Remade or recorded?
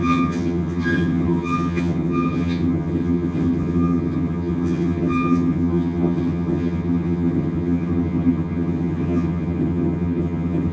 remade